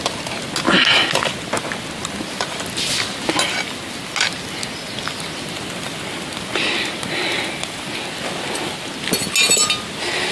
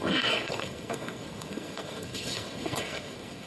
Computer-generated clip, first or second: second